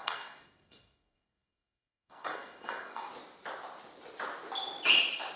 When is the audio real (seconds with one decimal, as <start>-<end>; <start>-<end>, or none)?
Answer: 3.1-5.4